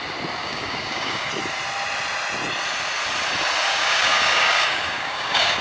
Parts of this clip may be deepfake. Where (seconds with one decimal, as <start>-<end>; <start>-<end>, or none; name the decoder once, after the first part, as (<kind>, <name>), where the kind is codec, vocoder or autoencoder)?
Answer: 0.4-1.3 (codec, DAC); 3.6-5.6